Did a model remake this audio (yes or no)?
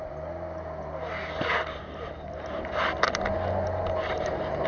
no